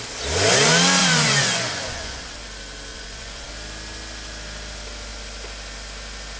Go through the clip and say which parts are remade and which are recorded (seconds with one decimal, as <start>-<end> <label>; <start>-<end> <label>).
0.0-1.0 recorded; 1.0-2.2 remade; 2.2-2.9 recorded; 2.9-3.5 remade; 3.5-6.4 recorded